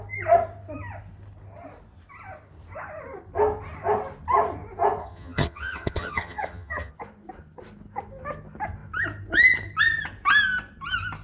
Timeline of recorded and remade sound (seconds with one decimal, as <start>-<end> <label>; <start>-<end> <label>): 0.0-5.0 recorded; 5.0-6.9 remade; 6.9-11.2 recorded